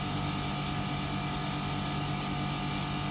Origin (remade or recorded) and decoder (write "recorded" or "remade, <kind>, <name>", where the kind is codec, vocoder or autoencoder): recorded